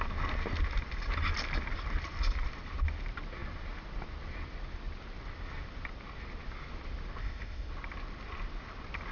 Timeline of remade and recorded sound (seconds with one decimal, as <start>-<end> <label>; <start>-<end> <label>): 0.0-7.2 recorded; 7.2-7.7 remade; 7.7-9.1 recorded